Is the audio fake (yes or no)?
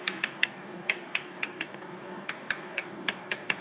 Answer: yes